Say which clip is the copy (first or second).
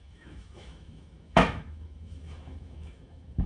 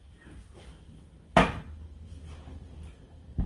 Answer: first